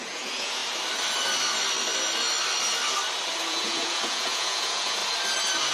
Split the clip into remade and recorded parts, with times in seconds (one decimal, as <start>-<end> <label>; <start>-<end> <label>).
0.0-0.6 remade; 0.6-3.5 recorded; 3.5-5.0 remade; 5.0-5.7 recorded